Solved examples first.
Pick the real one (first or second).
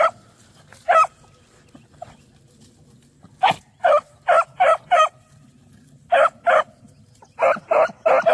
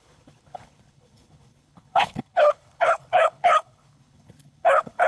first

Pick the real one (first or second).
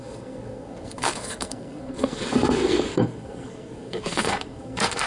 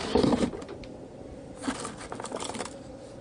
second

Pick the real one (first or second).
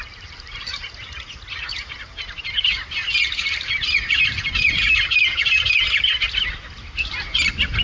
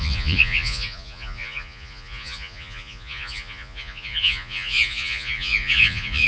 first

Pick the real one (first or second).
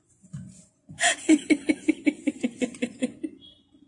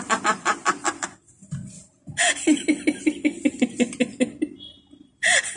second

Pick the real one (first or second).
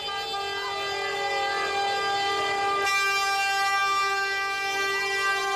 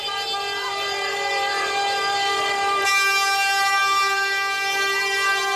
first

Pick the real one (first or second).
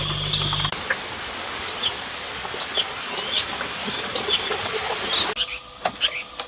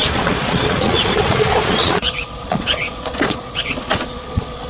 first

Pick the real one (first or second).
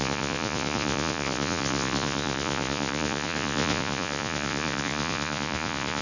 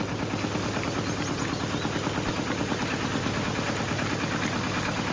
second